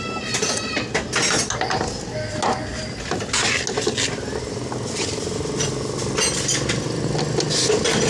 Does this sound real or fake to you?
real